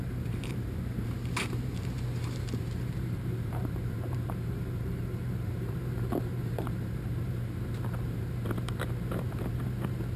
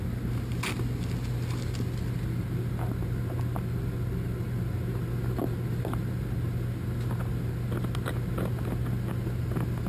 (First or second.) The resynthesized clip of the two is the first